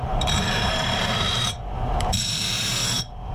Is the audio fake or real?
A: fake